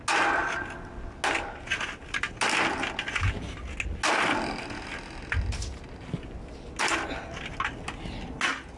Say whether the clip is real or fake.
real